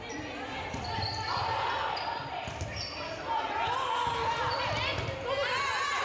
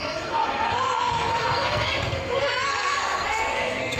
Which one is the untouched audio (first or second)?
first